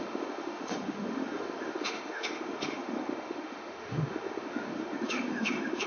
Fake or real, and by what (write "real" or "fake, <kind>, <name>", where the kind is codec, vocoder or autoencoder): fake, autoencoder, DAC-VAE